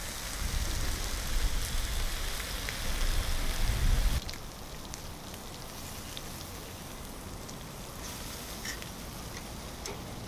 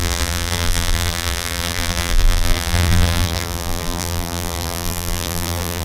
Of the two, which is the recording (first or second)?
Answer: first